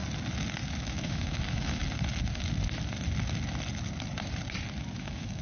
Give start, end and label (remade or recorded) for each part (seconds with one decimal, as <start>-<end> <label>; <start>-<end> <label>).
0.0-0.8 recorded; 0.8-1.8 remade; 1.8-5.0 recorded; 5.0-5.4 remade